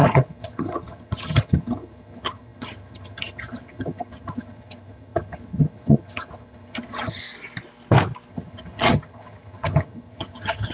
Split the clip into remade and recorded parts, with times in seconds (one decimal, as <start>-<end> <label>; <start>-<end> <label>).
0.0-7.2 remade; 7.2-8.3 recorded; 8.3-10.7 remade

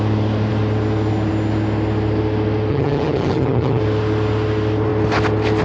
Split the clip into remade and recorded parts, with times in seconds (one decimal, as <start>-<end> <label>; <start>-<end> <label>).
0.0-2.7 recorded; 2.7-3.8 remade; 3.8-5.6 recorded

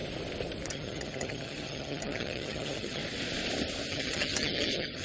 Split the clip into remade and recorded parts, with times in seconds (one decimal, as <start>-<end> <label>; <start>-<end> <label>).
0.0-0.7 recorded; 0.7-3.0 remade; 3.0-3.9 recorded; 3.9-5.0 remade

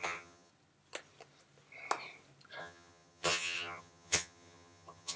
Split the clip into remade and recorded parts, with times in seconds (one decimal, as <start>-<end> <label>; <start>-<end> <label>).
0.0-0.5 remade; 0.5-2.6 recorded; 2.6-5.2 remade

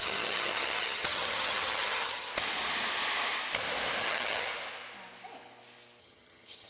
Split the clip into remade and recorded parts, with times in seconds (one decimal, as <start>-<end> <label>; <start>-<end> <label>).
0.0-2.3 remade; 2.3-4.0 recorded; 4.0-4.5 remade; 4.5-6.0 recorded; 6.0-6.7 remade

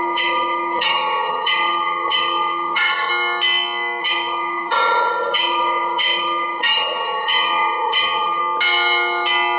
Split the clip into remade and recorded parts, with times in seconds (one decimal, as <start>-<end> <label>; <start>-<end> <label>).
0.0-3.1 remade; 3.1-4.0 recorded; 4.0-8.4 remade; 8.4-9.6 recorded

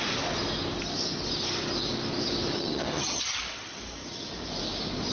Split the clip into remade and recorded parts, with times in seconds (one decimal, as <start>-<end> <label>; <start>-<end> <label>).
0.0-2.5 recorded; 2.5-3.4 remade; 3.4-5.1 recorded

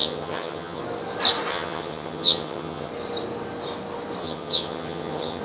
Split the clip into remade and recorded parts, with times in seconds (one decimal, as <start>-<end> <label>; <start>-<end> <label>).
0.0-0.8 remade; 0.8-1.5 recorded; 1.5-2.9 remade; 2.9-4.2 recorded; 4.2-5.4 remade